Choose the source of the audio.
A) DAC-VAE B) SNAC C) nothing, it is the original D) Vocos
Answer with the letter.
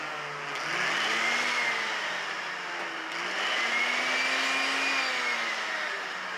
C